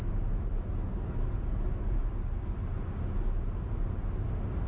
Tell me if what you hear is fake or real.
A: real